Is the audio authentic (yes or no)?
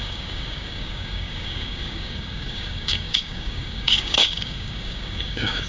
no